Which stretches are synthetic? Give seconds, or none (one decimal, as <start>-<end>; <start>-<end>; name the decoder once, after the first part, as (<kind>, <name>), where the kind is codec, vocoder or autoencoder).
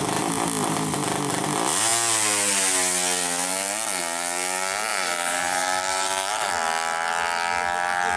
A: 4.9-6.5 (vocoder, BigVGAN v2)